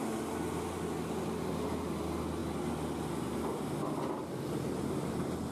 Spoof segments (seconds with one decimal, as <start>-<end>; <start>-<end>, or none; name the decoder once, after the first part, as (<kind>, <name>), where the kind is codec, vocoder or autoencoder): none